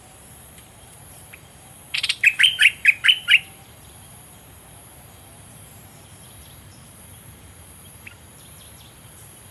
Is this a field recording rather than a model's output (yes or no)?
no